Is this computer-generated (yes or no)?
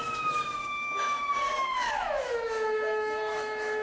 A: yes